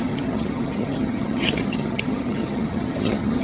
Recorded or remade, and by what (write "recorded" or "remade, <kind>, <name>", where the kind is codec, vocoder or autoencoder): remade, vocoder, HiFi-GAN